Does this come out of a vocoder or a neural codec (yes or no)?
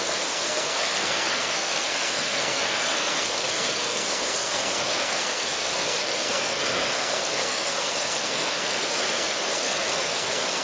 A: yes